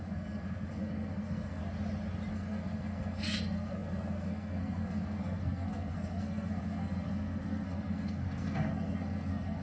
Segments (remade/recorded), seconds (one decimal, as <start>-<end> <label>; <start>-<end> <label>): 0.0-1.6 remade; 1.6-2.3 recorded; 2.3-9.6 remade